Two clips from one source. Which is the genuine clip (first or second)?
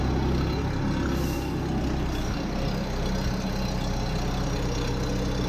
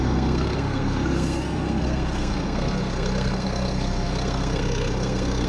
first